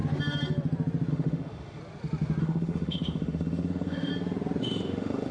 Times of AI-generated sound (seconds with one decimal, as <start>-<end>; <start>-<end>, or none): 1.1-1.8; 2.4-4.1; 4.6-5.3